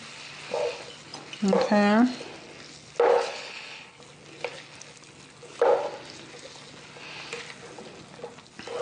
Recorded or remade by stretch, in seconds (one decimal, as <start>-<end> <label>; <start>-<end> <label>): 0.0-3.1 recorded; 3.1-4.0 remade; 4.0-8.8 recorded